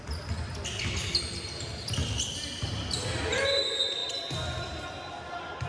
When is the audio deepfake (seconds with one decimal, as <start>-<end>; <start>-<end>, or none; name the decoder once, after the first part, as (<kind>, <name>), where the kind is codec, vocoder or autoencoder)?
none